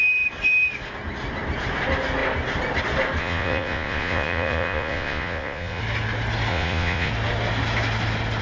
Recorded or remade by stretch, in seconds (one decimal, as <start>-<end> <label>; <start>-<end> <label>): 0.0-3.2 recorded; 3.2-5.8 remade; 5.8-6.5 recorded; 6.5-7.1 remade; 7.1-8.4 recorded